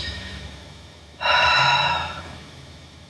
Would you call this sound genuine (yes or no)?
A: no